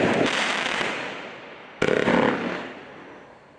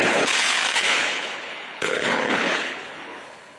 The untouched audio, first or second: first